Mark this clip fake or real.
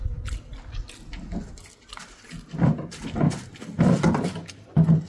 real